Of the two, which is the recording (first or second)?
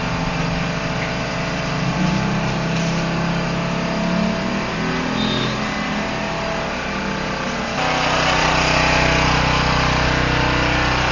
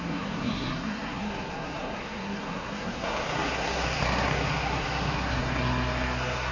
first